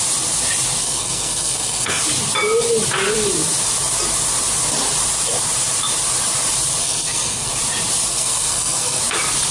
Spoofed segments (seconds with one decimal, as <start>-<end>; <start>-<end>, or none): 0.8-2.0; 6.8-7.5; 8.1-9.0

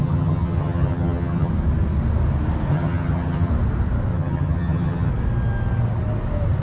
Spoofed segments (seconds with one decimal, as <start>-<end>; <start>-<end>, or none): 0.0-1.5; 2.7-3.5; 4.1-5.1

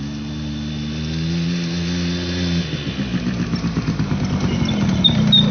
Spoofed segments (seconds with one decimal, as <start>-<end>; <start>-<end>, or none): none

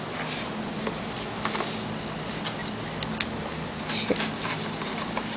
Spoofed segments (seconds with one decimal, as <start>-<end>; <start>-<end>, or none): none

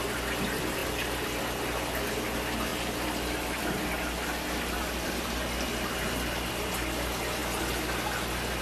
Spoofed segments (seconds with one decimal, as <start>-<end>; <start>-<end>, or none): none